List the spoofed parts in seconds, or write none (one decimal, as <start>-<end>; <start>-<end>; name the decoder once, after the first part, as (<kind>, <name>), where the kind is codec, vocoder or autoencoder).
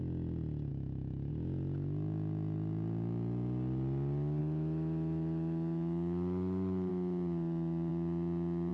0.7-1.3 (autoencoder, DAC-VAE); 4.4-6.9